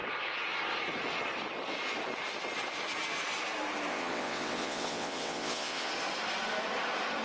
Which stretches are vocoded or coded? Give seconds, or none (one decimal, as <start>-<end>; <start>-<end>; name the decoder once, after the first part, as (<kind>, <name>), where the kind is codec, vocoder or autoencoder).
3.9-5.9 (vocoder, WaveNeXt)